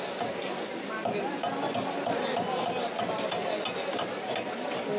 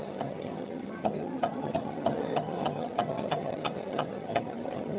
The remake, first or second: second